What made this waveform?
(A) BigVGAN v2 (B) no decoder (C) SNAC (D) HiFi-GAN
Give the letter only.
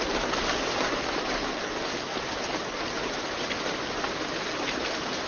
B